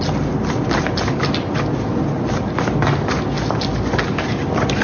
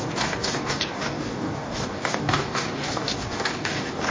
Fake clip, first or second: second